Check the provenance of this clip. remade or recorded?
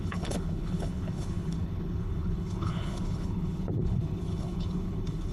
remade